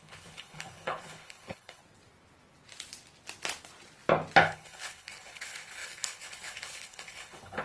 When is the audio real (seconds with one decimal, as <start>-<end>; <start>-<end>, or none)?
1.8-4.4